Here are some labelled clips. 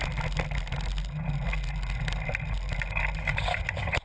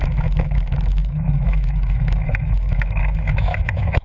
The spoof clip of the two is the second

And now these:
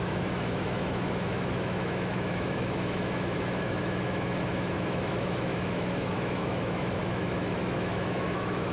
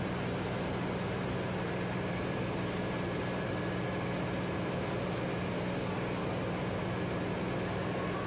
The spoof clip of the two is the first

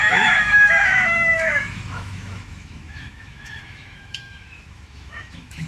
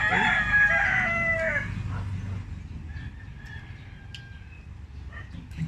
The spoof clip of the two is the first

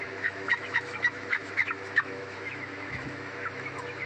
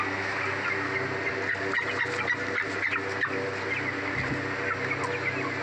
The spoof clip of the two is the first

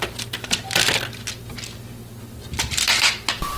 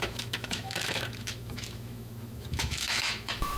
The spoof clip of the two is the second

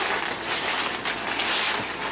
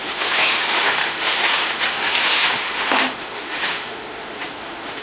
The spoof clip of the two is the second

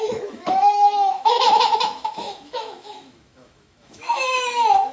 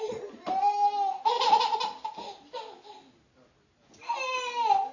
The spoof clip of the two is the first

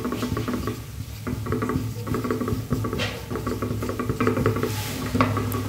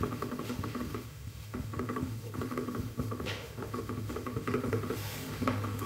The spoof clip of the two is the second